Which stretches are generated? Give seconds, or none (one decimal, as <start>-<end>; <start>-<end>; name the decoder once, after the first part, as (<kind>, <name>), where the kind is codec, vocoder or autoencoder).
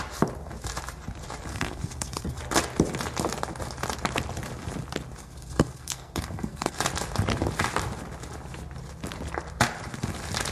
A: 1.5-2.4 (codec, SNAC); 5.2-6.8